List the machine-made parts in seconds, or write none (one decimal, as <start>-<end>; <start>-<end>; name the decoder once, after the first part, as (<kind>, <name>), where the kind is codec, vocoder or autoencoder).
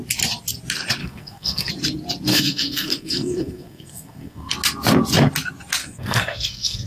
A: 1.0-1.7 (codec, SNAC); 2.3-4.5; 5.8-6.9